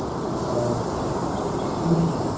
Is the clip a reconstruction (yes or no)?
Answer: no